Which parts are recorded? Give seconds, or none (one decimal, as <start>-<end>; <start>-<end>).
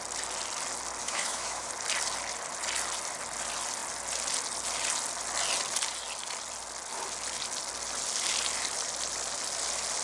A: 0.0-1.0; 1.7-10.0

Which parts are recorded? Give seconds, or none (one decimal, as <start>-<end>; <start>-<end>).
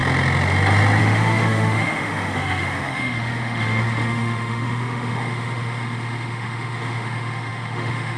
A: 0.0-1.0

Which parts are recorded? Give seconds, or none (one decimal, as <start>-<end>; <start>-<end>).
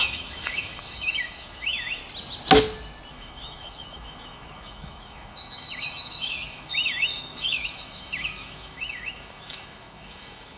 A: 2.0-3.1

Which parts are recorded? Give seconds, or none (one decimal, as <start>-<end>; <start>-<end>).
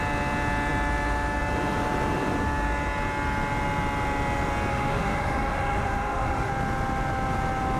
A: 0.0-4.7; 6.5-7.8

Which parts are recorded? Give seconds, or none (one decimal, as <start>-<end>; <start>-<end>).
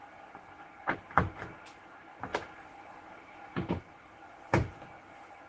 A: 0.0-5.5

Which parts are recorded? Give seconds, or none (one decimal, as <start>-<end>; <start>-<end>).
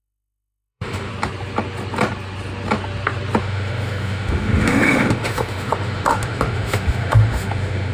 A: 1.1-3.4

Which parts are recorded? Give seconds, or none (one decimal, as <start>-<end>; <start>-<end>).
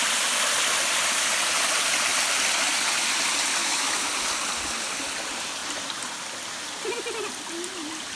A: 0.0-3.6; 4.1-8.2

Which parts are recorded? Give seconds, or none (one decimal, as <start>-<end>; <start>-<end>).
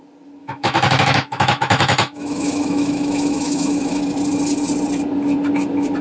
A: 0.0-0.4; 4.0-6.0